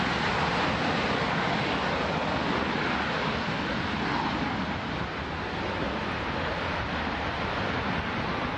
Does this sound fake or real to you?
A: real